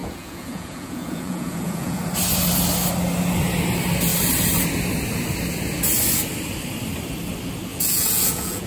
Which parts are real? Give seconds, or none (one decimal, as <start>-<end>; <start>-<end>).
2.0-7.7